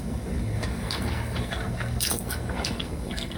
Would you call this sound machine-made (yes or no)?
yes